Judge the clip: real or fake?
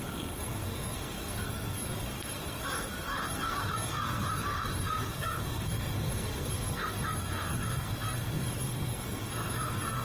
fake